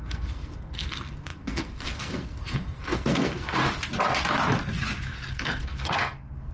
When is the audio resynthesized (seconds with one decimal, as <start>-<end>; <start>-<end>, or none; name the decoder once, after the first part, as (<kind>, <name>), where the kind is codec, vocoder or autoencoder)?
0.0-3.6 (codec, SNAC); 5.3-6.5